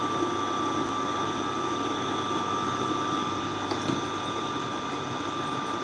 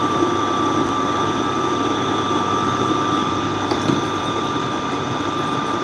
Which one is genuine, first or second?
first